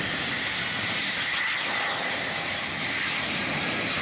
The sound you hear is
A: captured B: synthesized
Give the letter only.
A